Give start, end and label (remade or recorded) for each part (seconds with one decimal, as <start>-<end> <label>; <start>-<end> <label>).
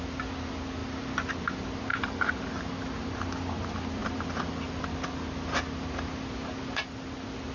0.0-1.9 recorded; 1.9-2.8 remade; 2.8-4.0 recorded; 4.0-4.8 remade; 4.8-7.5 recorded